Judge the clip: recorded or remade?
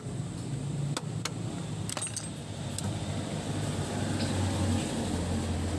recorded